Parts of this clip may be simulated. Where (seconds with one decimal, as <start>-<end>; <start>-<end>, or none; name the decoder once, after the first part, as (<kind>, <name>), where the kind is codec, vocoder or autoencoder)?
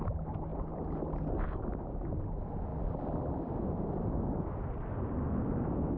2.7-3.5 (vocoder, BigVGAN v2)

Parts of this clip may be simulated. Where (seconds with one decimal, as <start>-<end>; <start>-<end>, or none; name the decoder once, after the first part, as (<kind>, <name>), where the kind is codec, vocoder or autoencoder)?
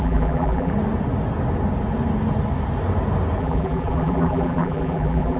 0.0-0.7 (vocoder, BigVGAN v2); 3.4-5.4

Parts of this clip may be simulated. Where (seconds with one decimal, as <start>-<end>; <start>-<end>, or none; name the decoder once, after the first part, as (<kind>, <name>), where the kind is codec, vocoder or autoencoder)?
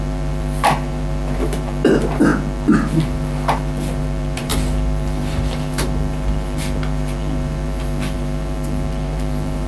0.0-9.7 (vocoder, BigVGAN v2)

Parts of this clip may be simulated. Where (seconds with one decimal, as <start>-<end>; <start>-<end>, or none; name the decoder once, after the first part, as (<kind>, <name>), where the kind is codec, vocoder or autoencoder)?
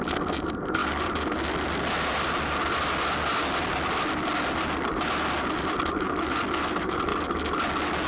0.0-0.8 (vocoder, BigVGAN v2); 1.9-7.1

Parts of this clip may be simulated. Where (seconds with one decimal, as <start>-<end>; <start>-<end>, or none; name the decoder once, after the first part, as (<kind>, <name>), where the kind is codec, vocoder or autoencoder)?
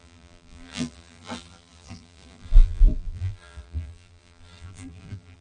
0.0-5.4 (vocoder, BigVGAN v2)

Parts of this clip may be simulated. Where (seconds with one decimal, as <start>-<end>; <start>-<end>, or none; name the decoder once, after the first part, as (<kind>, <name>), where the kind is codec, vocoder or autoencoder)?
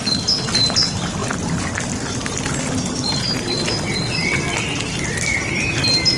none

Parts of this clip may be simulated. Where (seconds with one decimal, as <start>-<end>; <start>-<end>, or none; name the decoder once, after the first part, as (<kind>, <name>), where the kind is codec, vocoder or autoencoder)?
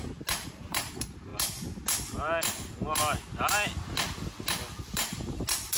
0.0-1.3 (vocoder, BigVGAN v2); 4.8-5.8